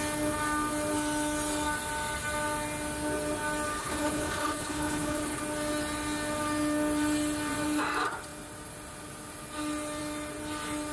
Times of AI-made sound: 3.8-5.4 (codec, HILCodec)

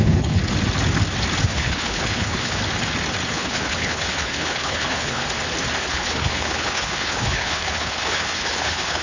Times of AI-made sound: 0.0-0.4 (codec, HILCodec); 1.4-2.6; 3.3-5.2; 5.9-9.0

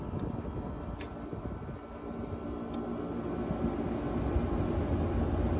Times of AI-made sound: none

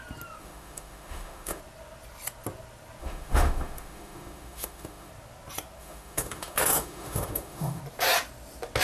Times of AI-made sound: 0.4-1.6 (autoencoder, DAC-VAE); 3.0-5.1; 5.8-7.8

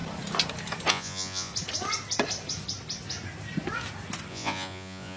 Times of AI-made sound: 0.9-1.5 (vocoder, Vocos); 4.3-5.2

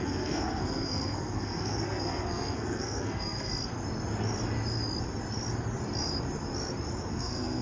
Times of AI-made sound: 0.0-3.5 (codec, SNAC); 7.1-7.6

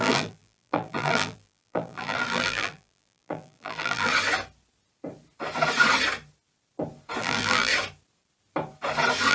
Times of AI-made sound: 0.0-4.1 (vocoder, BigVGAN v2); 7.2-7.7